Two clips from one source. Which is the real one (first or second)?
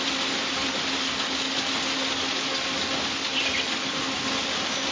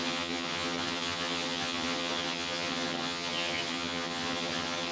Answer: first